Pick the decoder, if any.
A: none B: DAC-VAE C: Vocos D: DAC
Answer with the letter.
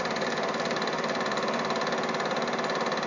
A